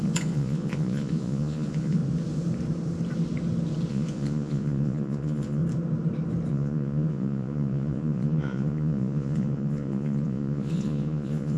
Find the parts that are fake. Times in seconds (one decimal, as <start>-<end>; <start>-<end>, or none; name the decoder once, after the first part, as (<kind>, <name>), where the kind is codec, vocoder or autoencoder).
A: 0.0-2.0 (vocoder, Vocos); 3.9-5.6; 6.5-11.6